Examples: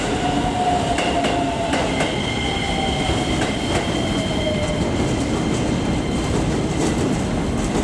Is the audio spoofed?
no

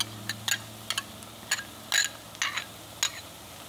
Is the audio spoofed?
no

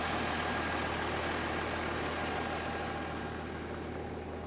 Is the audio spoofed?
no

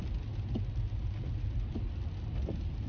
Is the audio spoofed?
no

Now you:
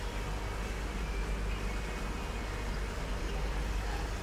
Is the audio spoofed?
no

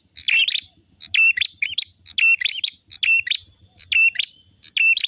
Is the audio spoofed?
no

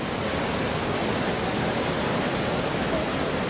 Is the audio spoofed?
no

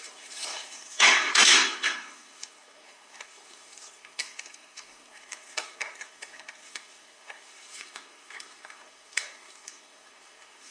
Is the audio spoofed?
yes